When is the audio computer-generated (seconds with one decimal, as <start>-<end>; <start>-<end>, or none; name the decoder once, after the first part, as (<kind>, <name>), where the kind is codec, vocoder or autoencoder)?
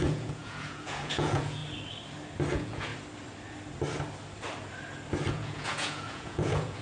0.0-1.6 (vocoder, Vocos); 2.5-2.9; 5.3-6.8